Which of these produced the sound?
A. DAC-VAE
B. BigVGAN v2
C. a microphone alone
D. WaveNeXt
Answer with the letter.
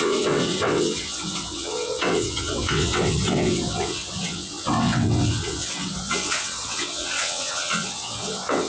D